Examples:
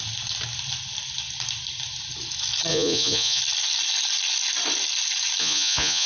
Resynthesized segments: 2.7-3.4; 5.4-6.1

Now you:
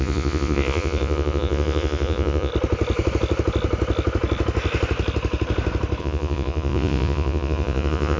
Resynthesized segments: 0.0-2.5; 6.0-8.2

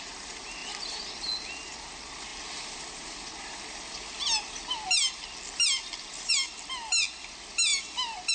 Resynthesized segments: none